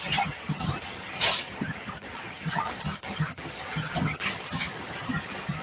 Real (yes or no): no